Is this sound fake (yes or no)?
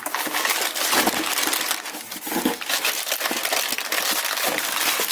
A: no